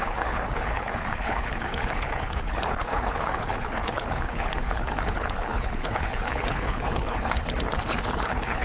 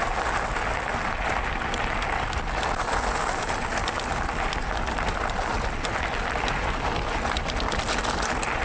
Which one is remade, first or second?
first